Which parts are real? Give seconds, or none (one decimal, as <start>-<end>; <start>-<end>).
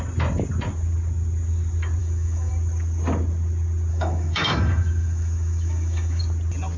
0.0-2.0; 2.5-3.9; 6.2-6.8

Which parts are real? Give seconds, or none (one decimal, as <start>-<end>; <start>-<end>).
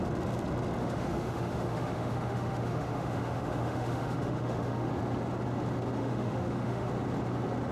0.0-0.8; 4.9-6.0; 6.9-7.7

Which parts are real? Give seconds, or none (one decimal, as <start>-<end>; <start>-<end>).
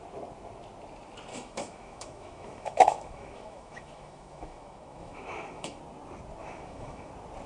0.0-1.3; 5.8-6.4; 7.1-7.5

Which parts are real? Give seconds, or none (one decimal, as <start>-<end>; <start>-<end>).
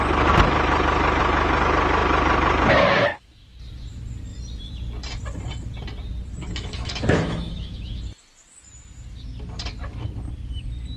0.0-3.1; 3.6-6.4; 8.0-11.0